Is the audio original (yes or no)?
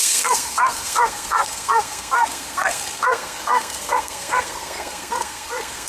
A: no